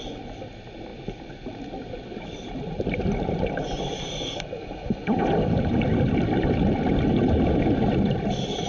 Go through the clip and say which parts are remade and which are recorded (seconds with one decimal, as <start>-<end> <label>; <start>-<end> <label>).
0.0-8.7 recorded